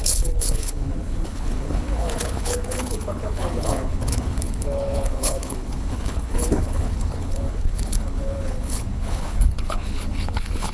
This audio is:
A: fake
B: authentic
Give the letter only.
A